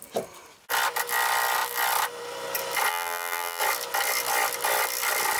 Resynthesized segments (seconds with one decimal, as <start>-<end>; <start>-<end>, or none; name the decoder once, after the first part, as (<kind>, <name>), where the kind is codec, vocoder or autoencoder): 2.9-3.6 (vocoder, BigVGAN v2)